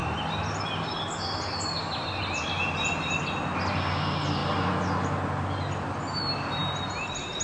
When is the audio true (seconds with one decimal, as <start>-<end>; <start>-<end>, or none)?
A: 0.0-7.4